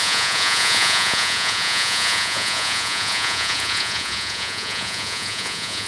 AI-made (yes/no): yes